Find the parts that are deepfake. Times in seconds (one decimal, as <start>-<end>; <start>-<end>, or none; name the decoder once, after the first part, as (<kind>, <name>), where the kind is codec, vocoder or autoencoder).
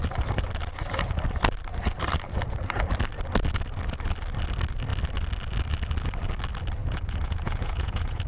6.8-8.3 (vocoder, Vocos)